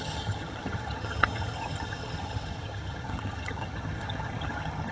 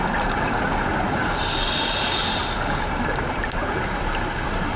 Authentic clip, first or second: second